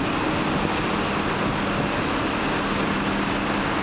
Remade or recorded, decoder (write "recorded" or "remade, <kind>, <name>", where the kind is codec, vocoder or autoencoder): recorded